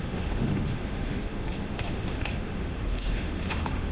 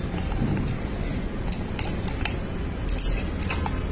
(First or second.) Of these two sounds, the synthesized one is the first